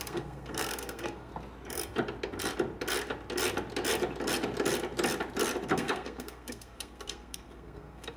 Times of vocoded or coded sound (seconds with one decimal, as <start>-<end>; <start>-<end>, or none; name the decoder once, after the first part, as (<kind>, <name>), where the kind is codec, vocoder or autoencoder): 0.0-1.3 (codec, SNAC); 5.7-8.2